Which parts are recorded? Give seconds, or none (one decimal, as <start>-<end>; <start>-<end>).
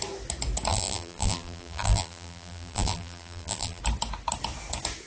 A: 0.0-0.7; 3.8-5.1